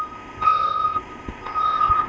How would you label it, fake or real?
fake